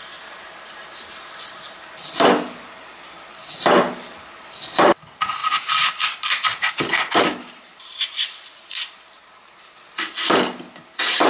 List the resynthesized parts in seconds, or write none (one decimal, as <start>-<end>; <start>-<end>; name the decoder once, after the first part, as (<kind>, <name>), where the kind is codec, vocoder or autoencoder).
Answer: none